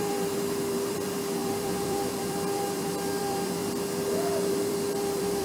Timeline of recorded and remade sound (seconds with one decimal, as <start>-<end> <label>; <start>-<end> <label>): 0.0-3.6 remade; 3.6-4.5 recorded; 4.5-5.4 remade

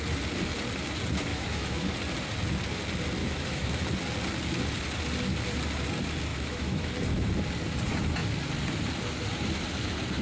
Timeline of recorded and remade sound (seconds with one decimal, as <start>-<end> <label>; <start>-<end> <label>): 0.0-1.3 recorded; 1.3-1.9 remade; 1.9-3.2 recorded; 3.2-3.8 remade; 3.8-6.3 recorded; 6.3-6.9 remade; 6.9-10.2 recorded